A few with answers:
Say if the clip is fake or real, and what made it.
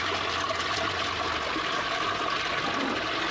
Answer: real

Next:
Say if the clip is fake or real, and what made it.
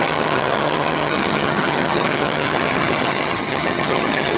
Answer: fake, vocoder, HiFi-GAN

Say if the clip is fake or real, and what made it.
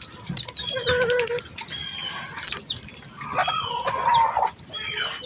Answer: real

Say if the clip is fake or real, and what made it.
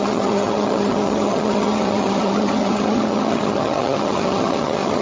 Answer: fake, vocoder, HiFi-GAN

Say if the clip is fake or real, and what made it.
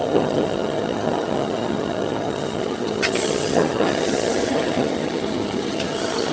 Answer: fake, vocoder, HiFi-GAN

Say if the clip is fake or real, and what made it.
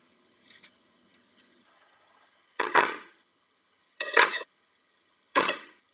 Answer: fake, vocoder, HiFi-GAN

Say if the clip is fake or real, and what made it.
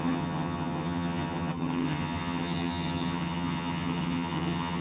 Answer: fake, vocoder, HiFi-GAN